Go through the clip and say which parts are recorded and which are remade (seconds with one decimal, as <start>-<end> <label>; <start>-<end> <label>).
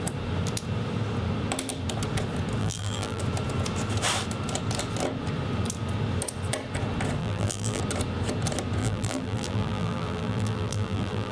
0.0-2.6 recorded; 2.6-3.2 remade; 3.2-7.2 recorded; 7.2-7.8 remade; 7.8-8.8 recorded; 8.8-11.3 remade